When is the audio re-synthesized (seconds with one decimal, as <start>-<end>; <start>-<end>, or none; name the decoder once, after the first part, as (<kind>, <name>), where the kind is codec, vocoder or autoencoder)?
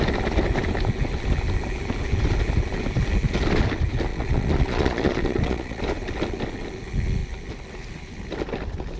4.1-5.8 (vocoder, Vocos)